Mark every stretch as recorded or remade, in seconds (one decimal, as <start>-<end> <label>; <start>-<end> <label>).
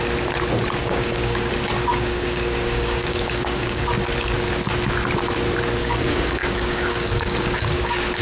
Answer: 0.0-0.8 recorded; 0.8-1.5 remade; 1.5-1.9 recorded; 1.9-3.8 remade; 3.8-5.8 recorded; 5.8-8.2 remade